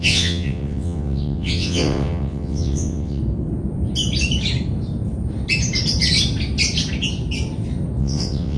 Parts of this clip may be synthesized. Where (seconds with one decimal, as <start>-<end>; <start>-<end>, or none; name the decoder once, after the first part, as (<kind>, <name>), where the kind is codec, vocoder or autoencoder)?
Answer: 0.0-3.2 (vocoder, WaveNeXt); 8.0-8.6